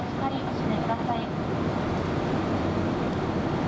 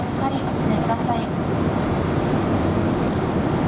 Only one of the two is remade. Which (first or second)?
second